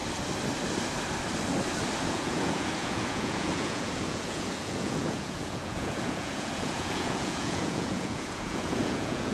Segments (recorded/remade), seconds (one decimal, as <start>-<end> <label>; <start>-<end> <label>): 0.0-2.1 recorded; 2.1-9.3 remade

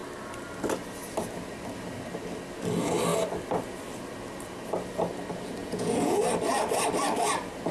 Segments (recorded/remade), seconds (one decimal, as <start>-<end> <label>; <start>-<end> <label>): 0.0-5.6 recorded; 5.6-6.2 remade; 6.2-7.7 recorded

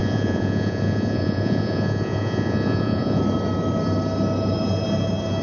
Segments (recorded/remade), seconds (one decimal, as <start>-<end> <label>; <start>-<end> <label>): 0.0-3.2 remade; 3.2-5.4 recorded

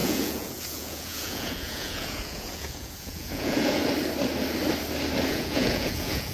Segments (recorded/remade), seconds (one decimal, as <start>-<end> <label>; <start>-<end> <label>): 0.0-3.8 remade; 3.8-5.3 recorded; 5.3-6.3 remade

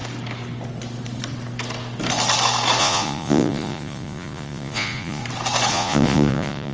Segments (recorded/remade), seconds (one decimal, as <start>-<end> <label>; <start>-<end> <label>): 0.0-2.8 recorded; 2.8-5.2 remade; 5.2-5.7 recorded; 5.7-6.7 remade